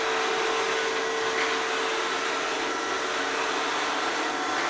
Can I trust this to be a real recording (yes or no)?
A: yes